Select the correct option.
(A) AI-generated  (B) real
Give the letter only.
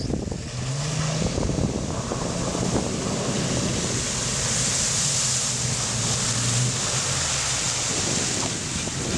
B